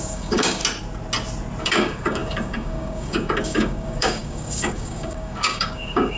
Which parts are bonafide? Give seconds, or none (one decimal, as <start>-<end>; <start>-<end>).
0.6-1.6